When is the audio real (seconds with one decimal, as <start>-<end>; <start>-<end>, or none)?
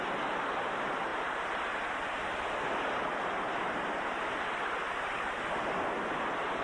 0.0-6.6